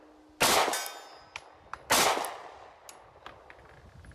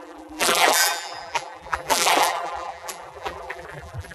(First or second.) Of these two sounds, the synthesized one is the second